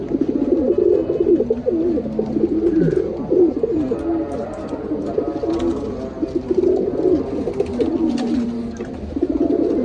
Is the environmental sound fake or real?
real